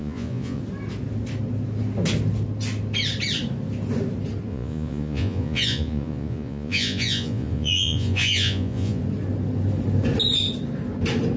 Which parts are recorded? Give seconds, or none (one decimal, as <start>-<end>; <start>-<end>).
0.6-4.5; 9.0-11.4